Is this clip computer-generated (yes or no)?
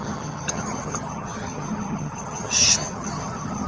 yes